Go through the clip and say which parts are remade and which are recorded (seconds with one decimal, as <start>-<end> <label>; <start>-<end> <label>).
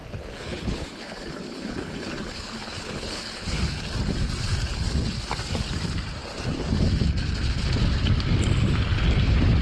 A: 0.0-3.6 remade; 3.6-9.6 recorded